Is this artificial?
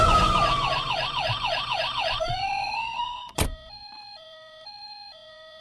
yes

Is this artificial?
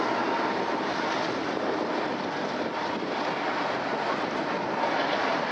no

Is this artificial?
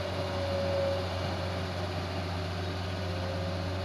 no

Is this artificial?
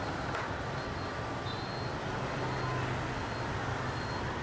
no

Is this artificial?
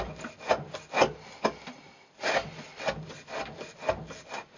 no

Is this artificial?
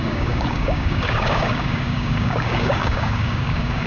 yes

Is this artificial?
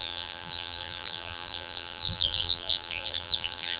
yes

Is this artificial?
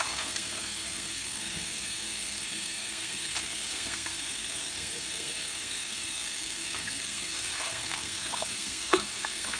yes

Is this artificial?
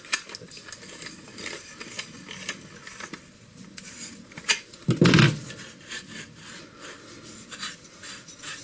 no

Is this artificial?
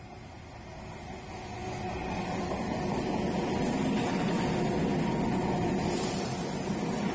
no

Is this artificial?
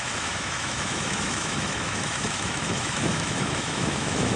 yes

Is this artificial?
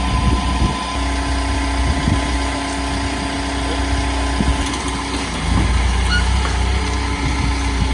no